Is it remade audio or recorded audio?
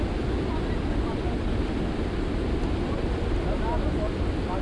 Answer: recorded